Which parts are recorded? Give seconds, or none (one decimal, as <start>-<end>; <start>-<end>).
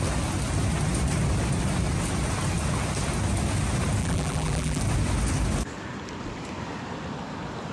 0.0-4.0; 4.8-7.7